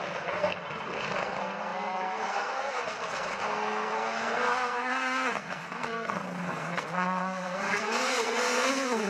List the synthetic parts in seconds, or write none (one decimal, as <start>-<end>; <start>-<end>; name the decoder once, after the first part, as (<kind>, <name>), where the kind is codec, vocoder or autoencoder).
0.0-9.1 (codec, SNAC)